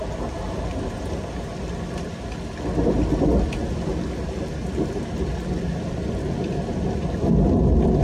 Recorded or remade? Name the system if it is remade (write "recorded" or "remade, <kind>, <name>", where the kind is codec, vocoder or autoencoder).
recorded